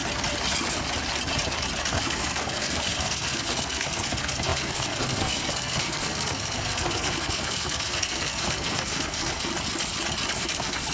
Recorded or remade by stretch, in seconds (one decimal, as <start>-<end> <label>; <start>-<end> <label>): 0.0-1.8 recorded; 1.8-9.5 remade; 9.5-10.4 recorded; 10.4-10.9 remade